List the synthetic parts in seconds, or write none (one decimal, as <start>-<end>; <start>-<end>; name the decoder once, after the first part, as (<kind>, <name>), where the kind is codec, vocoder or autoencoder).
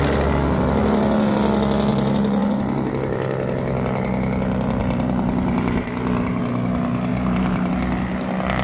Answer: 1.9-2.9 (vocoder, BigVGAN v2); 4.8-6.4; 7.1-7.7